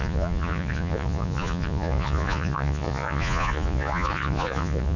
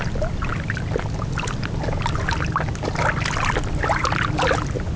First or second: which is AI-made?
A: first